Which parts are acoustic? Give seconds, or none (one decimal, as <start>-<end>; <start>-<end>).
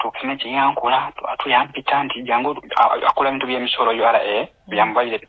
0.0-5.3